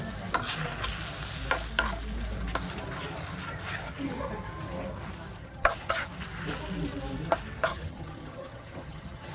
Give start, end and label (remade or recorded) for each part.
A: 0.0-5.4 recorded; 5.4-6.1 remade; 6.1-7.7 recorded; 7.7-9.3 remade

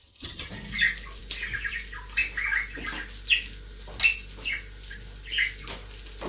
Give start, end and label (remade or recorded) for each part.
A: 0.0-0.5 remade; 0.5-6.3 recorded

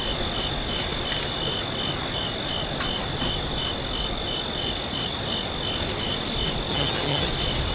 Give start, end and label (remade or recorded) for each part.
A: 0.0-6.7 recorded; 6.7-7.3 remade; 7.3-7.7 recorded

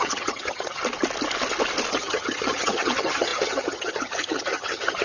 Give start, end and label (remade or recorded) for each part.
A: 0.0-0.8 remade; 0.8-1.9 recorded; 1.9-5.0 remade

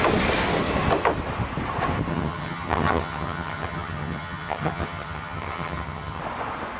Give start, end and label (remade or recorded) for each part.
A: 0.0-2.1 recorded; 2.1-6.2 remade; 6.2-6.8 recorded

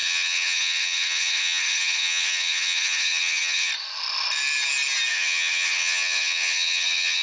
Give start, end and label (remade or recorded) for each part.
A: 0.0-3.7 remade; 3.7-5.1 recorded; 5.1-7.2 remade

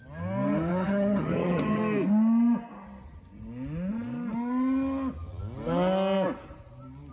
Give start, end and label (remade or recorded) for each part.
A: 0.0-0.7 recorded; 0.7-1.8 remade; 1.8-7.1 recorded

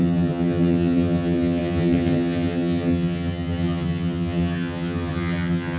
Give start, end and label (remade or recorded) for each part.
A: 0.0-5.8 remade